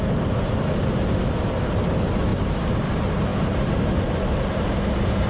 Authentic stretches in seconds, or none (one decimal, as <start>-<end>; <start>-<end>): none

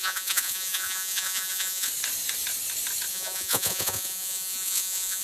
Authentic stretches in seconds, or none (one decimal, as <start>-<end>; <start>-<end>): 1.9-3.1

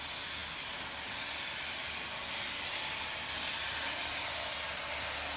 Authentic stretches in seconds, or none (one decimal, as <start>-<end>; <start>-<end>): 0.0-5.4

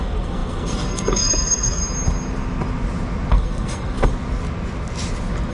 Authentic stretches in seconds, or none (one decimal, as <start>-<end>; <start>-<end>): 1.8-3.3; 4.1-5.5

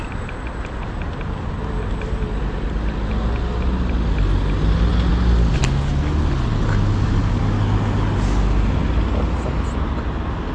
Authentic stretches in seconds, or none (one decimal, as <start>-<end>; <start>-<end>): 0.0-10.5

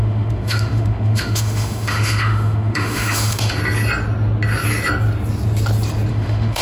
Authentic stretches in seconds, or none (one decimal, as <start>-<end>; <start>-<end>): 3.6-6.1

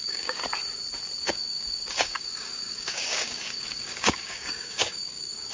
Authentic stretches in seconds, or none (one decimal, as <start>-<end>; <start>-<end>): 0.4-1.2

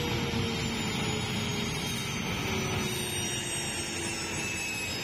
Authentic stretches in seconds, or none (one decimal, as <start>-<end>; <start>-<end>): 0.0-5.0